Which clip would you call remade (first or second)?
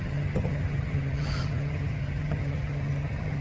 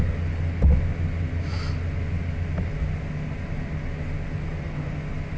first